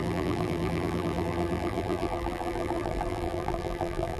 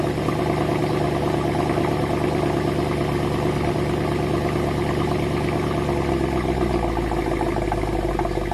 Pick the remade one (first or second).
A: first